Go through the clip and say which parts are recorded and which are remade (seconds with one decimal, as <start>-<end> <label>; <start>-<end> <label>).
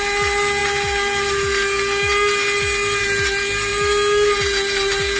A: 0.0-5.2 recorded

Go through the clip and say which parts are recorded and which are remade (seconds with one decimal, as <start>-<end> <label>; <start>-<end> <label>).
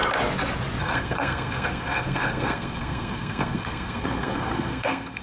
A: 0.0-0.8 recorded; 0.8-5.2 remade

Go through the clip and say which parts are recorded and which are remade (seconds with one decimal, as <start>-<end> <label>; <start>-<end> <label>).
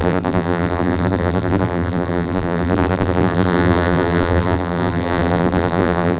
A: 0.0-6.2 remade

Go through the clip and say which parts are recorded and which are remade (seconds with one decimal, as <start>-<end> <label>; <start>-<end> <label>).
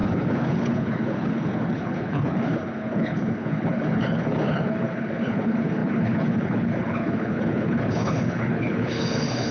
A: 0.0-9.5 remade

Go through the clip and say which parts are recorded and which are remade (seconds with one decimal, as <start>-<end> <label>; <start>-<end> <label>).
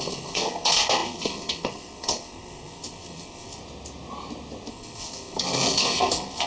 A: 0.0-3.6 remade; 3.6-4.7 recorded; 4.7-6.5 remade